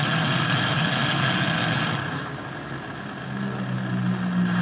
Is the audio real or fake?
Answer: real